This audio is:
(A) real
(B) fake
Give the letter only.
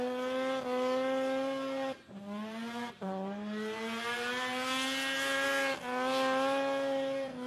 A